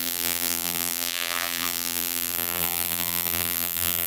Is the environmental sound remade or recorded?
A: remade